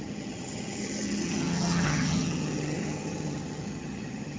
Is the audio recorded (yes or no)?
no